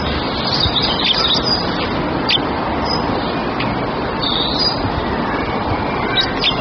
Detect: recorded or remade recorded